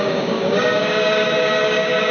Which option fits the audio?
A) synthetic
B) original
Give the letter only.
A